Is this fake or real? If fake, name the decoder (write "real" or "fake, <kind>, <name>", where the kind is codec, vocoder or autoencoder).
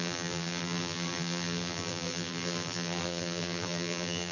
fake, vocoder, BigVGAN v2